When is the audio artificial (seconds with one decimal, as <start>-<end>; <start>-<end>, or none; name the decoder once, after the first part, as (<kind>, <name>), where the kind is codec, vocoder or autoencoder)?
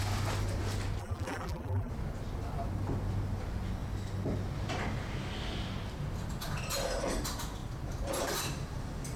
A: 1.0-1.9 (vocoder, BigVGAN v2)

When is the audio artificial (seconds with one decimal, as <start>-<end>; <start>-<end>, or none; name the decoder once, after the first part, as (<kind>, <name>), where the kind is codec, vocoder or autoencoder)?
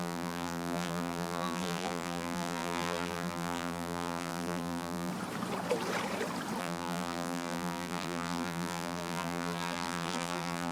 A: 0.0-5.1 (vocoder, BigVGAN v2); 6.6-10.7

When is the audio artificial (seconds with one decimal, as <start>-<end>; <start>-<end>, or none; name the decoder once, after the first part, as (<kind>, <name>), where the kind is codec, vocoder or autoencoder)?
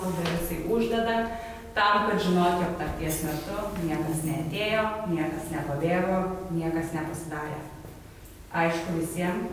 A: none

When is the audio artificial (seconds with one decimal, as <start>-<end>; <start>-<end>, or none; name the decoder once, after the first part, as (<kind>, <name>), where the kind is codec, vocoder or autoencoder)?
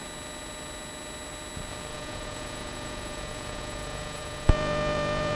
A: 1.9-5.4 (vocoder, Vocos)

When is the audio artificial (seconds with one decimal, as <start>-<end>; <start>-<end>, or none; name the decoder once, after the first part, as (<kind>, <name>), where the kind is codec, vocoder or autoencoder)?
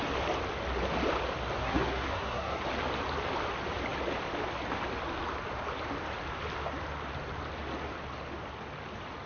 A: 1.6-2.6 (codec, SNAC)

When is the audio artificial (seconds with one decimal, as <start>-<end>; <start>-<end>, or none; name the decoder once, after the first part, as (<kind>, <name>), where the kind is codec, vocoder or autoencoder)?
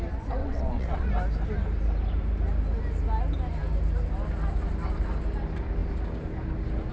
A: 0.4-1.1 (vocoder, WaveNeXt)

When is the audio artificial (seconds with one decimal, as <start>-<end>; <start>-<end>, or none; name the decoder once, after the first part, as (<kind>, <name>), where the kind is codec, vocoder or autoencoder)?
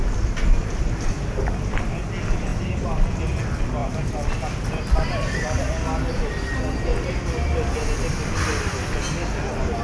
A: 3.8-5.6 (vocoder, BigVGAN v2)